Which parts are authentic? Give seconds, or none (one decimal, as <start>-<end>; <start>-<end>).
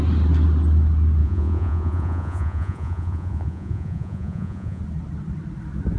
0.0-1.2; 4.8-6.0